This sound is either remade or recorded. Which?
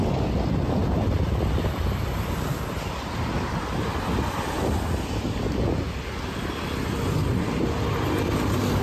recorded